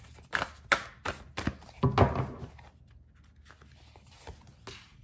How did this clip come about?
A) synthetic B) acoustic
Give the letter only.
B